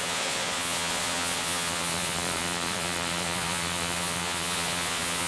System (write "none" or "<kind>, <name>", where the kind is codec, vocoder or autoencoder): vocoder, Vocos